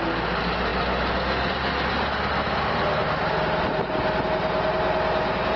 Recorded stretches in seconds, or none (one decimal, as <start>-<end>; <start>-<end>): 0.0-5.6